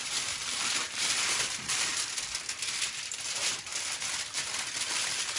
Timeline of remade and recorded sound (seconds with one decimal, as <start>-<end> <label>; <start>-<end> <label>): 0.0-1.9 remade; 1.9-3.2 recorded; 3.2-3.7 remade; 3.7-4.9 recorded; 4.9-5.4 remade